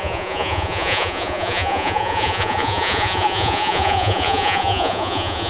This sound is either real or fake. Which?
fake